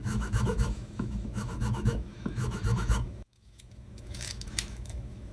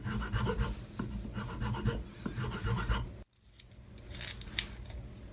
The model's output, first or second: first